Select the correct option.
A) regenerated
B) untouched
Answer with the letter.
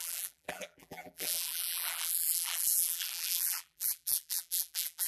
A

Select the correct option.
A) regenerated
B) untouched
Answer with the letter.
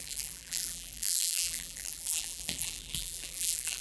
A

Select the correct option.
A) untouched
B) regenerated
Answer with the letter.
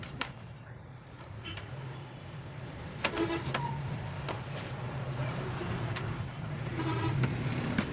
B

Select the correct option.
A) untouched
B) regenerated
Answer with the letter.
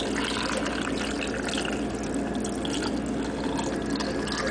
A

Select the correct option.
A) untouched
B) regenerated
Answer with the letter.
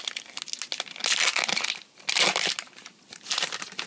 A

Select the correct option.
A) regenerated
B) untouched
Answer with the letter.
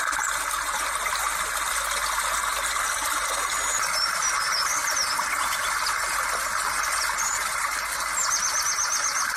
B